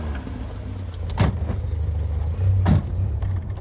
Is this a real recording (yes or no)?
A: yes